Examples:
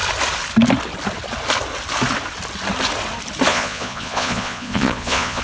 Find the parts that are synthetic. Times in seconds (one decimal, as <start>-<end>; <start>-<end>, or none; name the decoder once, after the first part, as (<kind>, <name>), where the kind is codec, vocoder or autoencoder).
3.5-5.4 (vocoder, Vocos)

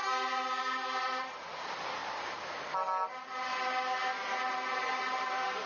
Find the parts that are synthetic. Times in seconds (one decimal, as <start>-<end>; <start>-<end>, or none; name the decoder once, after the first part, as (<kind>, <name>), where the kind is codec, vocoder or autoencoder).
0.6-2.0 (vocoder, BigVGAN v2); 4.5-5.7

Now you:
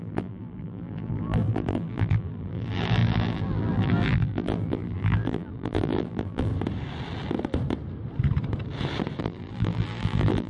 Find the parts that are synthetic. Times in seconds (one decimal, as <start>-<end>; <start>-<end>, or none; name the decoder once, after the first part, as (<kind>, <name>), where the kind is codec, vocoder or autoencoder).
0.0-6.5 (vocoder, BigVGAN v2); 9.2-10.5

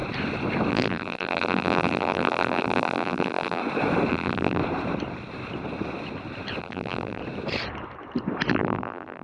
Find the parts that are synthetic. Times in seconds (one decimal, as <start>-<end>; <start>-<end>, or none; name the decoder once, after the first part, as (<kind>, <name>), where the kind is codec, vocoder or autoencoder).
0.7-3.6 (vocoder, BigVGAN v2); 4.1-4.6; 6.6-7.2; 8.5-9.2

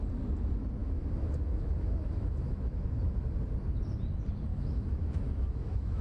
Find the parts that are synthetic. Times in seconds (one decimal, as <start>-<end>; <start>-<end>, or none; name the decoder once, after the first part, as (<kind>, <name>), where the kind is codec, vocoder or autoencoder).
0.8-3.1 (autoencoder, DAC-VAE); 4.5-6.0

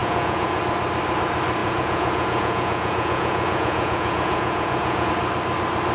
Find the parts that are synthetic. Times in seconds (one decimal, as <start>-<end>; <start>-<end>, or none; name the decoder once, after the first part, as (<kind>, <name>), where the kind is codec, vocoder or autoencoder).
0.0-0.6 (vocoder, Vocos); 1.6-5.1